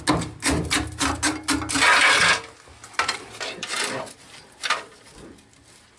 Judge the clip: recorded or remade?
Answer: recorded